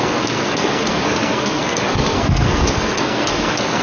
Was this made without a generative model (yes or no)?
no